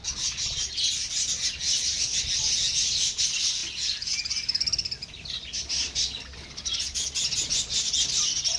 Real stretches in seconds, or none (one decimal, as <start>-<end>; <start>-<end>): 0.0-3.6; 6.8-8.6